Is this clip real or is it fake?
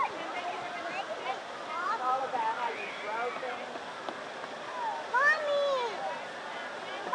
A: real